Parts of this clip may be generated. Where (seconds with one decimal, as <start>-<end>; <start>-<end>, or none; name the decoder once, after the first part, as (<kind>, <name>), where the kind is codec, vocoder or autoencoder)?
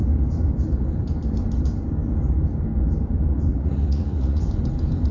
3.5-4.4 (vocoder, Vocos)